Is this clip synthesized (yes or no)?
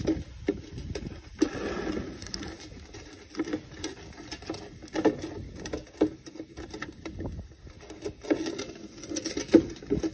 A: no